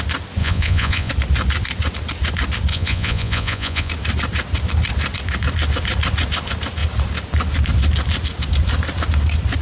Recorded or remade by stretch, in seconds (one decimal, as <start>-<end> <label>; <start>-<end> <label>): 0.0-0.4 recorded; 0.4-1.1 remade; 1.1-2.7 recorded; 2.7-3.9 remade; 3.9-9.6 recorded